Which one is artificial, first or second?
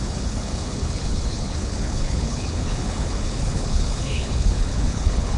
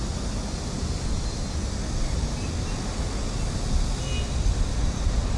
first